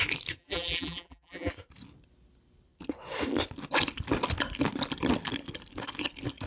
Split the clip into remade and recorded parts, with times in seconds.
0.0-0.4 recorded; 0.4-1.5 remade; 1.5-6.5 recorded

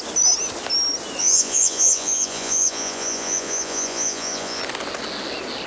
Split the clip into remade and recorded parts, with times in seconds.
0.0-1.2 recorded; 1.2-4.6 remade; 4.6-5.7 recorded